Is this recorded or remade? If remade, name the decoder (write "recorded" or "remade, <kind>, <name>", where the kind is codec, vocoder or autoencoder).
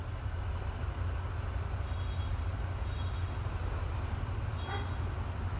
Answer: recorded